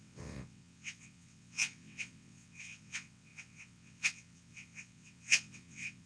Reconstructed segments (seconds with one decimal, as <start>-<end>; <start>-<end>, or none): 0.0-6.1